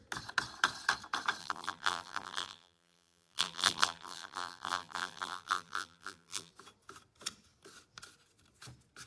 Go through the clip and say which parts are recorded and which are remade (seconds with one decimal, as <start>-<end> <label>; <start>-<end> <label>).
0.0-1.4 recorded; 1.4-6.5 remade; 6.5-9.1 recorded